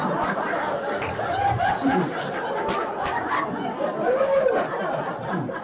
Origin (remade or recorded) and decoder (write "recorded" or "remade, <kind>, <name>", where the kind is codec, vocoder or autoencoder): recorded